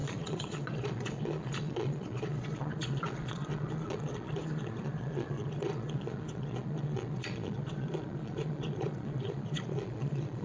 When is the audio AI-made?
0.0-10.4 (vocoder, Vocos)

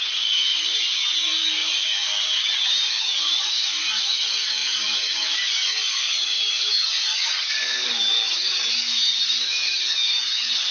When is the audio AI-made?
0.0-10.7 (codec, DAC)

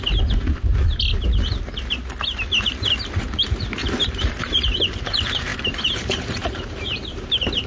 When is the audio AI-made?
0.0-0.9 (vocoder, BigVGAN v2); 3.2-3.8; 4.3-7.7

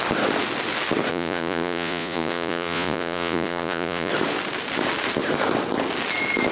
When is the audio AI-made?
1.1-4.1 (vocoder, Vocos)

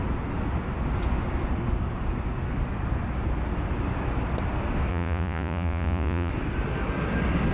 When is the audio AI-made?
4.9-6.3 (vocoder, Vocos)

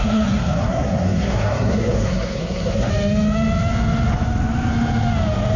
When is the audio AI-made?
0.0-2.9 (codec, SNAC)

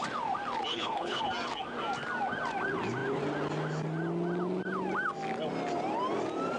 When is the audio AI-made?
0.7-1.2 (codec, HILCodec)

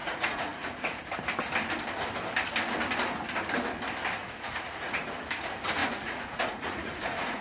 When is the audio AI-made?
0.0-1.0 (vocoder, Vocos); 4.2-5.1; 5.8-7.4